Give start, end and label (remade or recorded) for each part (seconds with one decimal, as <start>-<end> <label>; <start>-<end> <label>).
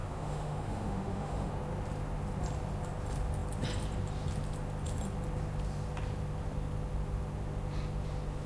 0.0-1.5 remade; 1.5-8.5 recorded